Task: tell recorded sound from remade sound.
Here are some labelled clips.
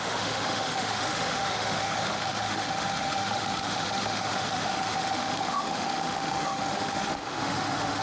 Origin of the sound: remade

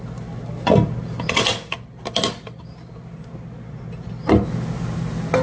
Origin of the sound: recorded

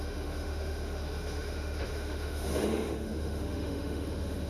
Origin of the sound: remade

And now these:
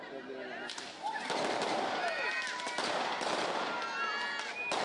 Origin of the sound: recorded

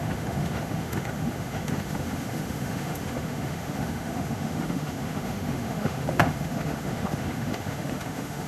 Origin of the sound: remade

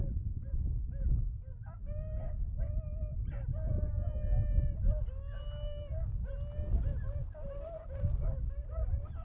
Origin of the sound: recorded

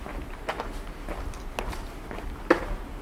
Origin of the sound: recorded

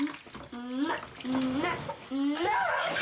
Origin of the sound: recorded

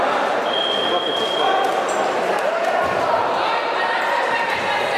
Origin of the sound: recorded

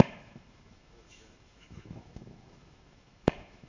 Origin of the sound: remade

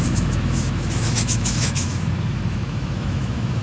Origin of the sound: remade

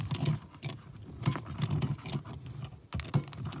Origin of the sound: recorded